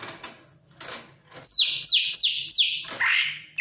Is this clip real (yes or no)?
yes